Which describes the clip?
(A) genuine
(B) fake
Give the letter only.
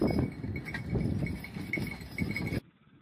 A